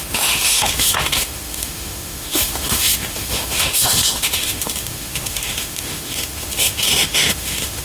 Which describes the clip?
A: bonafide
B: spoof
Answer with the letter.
B